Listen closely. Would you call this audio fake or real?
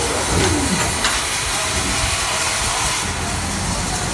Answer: real